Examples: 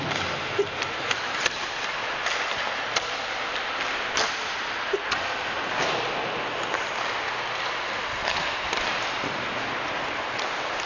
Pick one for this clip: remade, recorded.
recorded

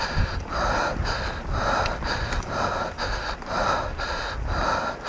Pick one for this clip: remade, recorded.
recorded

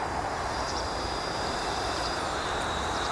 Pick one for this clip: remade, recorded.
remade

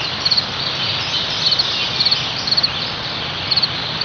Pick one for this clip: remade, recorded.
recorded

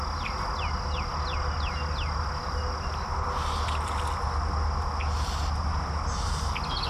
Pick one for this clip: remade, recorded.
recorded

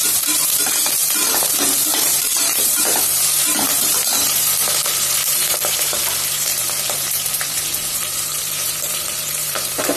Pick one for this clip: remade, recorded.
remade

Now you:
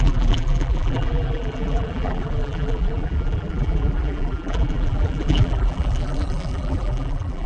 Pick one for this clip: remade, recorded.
remade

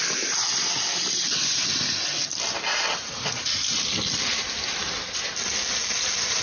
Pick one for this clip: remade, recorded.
recorded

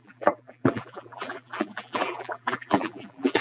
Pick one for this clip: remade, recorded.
remade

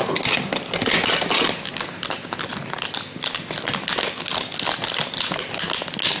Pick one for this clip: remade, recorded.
recorded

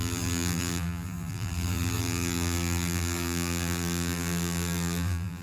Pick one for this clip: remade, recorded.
remade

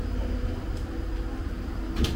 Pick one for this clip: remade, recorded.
recorded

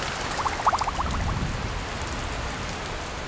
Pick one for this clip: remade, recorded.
recorded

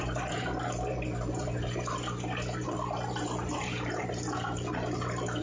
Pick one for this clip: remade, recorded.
remade